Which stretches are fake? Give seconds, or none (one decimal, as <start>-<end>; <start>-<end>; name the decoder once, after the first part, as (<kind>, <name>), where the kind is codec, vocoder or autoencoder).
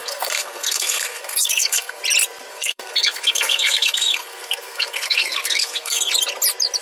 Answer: 0.0-2.0 (codec, SNAC); 2.5-6.1